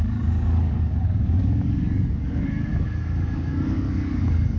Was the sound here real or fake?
fake